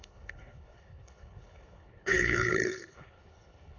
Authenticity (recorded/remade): remade